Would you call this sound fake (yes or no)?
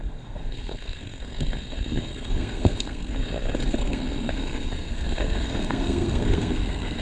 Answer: yes